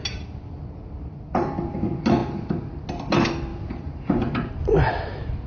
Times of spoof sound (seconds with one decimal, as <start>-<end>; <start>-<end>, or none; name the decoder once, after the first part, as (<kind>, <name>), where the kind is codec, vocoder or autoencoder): 2.2-2.7 (vocoder, BigVGAN v2); 3.5-4.5